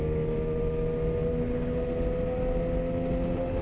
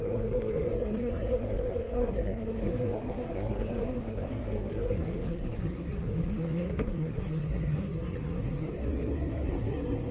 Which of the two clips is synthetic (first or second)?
second